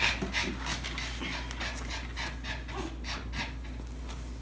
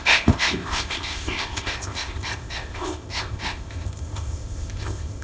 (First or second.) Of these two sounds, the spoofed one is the second